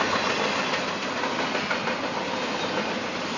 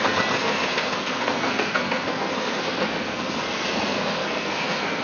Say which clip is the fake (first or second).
second